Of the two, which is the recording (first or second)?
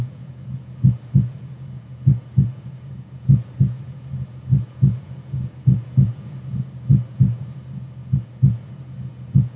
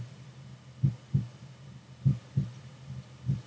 second